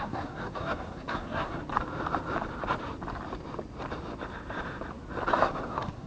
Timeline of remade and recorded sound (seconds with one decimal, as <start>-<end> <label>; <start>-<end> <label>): 0.0-1.6 remade; 1.6-5.3 recorded; 5.3-6.1 remade